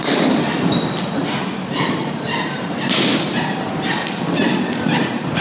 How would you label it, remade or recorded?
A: remade